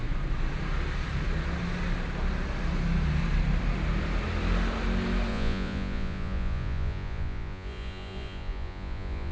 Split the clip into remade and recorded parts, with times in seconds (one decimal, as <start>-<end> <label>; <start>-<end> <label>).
0.0-5.3 recorded; 5.3-9.3 remade